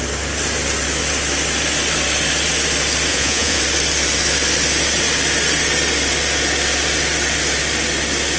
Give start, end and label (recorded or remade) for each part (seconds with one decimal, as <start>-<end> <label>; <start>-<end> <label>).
0.0-3.1 recorded; 3.1-3.6 remade; 3.6-8.4 recorded